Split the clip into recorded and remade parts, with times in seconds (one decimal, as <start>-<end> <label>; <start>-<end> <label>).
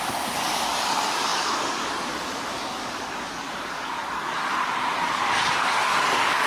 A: 0.0-4.4 remade; 4.4-5.2 recorded; 5.2-6.5 remade